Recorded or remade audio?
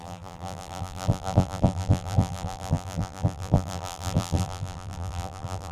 remade